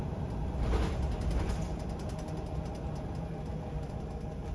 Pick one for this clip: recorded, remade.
recorded